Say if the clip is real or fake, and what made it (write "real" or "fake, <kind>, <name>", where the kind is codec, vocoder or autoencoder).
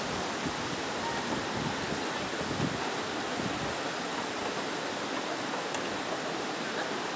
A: real